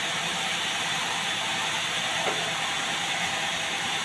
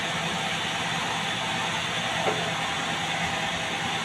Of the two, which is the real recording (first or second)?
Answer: second